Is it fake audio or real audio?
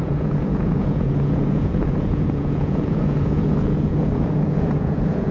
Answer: fake